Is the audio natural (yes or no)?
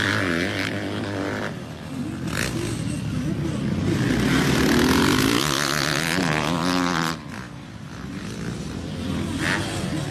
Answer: yes